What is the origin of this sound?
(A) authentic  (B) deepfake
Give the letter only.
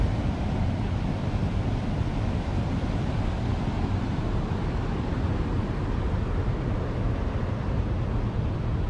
A